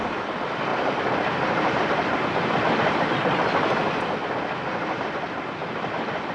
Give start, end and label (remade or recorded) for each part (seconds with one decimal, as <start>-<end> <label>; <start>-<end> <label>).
0.0-0.7 recorded; 0.7-2.5 remade; 2.5-5.6 recorded; 5.6-6.3 remade